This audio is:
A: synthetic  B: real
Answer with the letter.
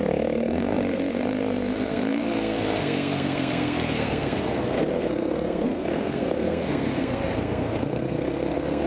A